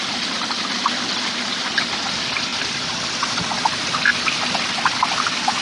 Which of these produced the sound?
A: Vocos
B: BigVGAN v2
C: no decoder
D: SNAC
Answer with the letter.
C